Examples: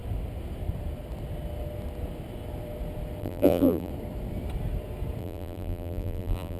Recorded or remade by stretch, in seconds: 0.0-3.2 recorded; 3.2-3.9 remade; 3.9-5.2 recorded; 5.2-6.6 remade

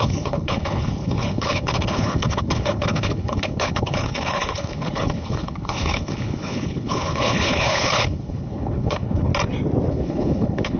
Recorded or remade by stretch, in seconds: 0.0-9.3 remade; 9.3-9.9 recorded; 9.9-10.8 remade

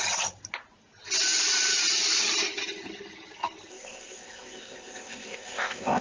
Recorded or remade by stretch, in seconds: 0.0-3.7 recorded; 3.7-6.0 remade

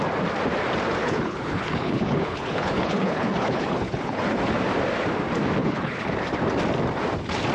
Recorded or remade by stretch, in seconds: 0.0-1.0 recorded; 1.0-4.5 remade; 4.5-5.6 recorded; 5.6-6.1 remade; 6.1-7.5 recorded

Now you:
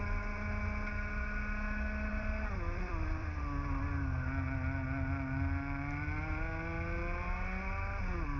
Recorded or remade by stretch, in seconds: 0.0-2.1 recorded; 2.1-3.4 remade; 3.4-8.4 recorded

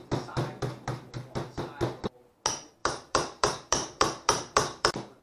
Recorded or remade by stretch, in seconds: 0.0-2.8 recorded; 2.8-5.2 remade

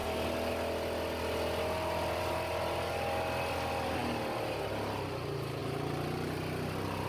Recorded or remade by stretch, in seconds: 0.0-7.1 recorded